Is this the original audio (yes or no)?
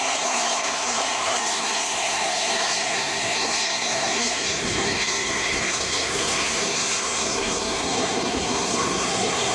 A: no